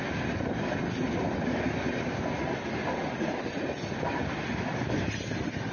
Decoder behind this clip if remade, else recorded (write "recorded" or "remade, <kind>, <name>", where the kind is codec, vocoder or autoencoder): recorded